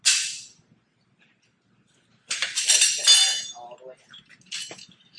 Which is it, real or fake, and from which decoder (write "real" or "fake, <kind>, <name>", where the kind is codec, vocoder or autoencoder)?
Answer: real